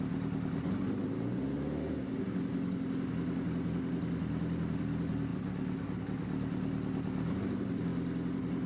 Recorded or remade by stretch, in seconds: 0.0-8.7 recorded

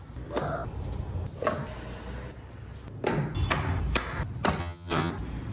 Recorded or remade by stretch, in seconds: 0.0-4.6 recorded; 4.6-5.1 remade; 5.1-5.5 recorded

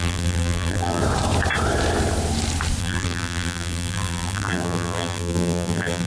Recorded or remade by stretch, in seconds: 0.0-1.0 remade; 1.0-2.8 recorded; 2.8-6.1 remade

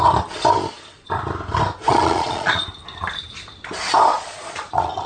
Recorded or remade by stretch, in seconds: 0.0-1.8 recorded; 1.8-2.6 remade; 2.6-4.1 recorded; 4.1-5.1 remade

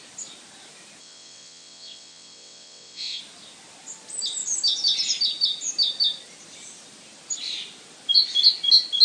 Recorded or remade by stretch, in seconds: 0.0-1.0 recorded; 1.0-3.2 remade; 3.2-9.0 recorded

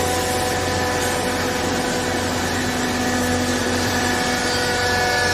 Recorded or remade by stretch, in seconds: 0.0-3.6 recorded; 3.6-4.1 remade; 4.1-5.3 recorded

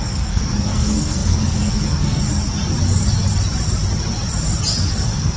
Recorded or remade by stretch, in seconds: 0.0-2.2 remade; 2.2-4.9 recorded; 4.9-5.4 remade